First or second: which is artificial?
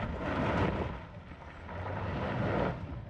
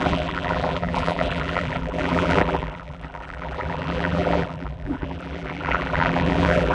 second